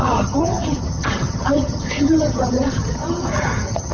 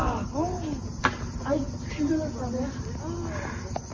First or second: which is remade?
first